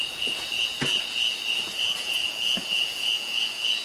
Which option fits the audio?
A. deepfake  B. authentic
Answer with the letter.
A